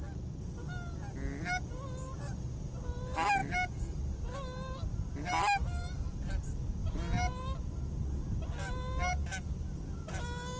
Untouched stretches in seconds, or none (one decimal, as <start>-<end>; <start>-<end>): 0.0-10.6